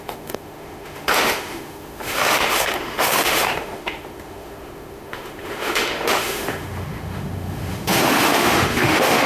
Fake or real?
fake